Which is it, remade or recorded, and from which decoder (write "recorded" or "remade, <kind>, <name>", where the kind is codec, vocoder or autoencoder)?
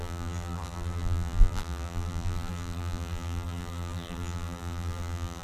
remade, vocoder, BigVGAN v2